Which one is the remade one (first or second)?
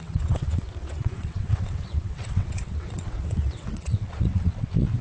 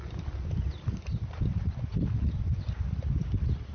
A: first